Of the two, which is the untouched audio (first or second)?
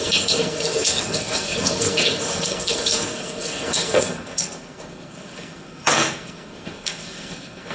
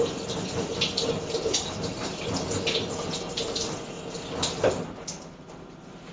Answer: second